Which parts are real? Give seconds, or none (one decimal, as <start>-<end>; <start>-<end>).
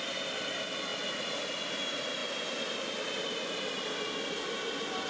0.0-5.1